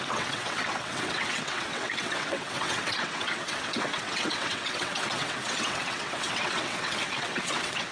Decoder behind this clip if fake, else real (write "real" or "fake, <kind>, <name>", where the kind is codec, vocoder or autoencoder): fake, vocoder, WaveNeXt